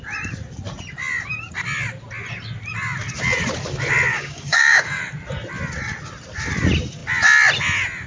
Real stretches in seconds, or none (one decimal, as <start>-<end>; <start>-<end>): 0.0-4.1; 5.0-8.1